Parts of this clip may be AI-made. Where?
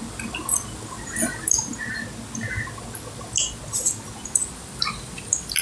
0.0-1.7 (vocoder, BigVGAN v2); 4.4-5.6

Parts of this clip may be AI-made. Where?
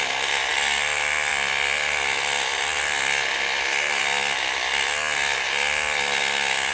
none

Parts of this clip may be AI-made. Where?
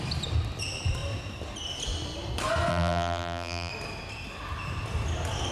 2.7-3.7 (vocoder, BigVGAN v2)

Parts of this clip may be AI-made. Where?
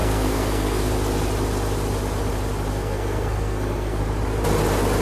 0.0-0.9 (codec, SNAC); 2.7-4.0